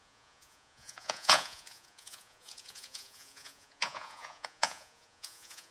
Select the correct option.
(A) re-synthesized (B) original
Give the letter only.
A